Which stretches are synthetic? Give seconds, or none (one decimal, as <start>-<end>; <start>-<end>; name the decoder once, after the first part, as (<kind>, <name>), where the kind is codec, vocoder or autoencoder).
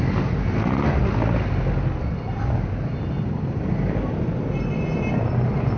none